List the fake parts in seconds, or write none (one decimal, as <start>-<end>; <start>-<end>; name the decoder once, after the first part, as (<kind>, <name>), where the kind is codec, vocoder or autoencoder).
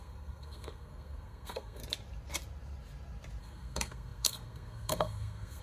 0.0-1.8 (codec, SNAC); 3.4-5.6